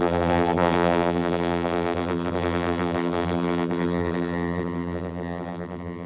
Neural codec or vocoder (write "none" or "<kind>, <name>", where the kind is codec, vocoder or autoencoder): vocoder, BigVGAN v2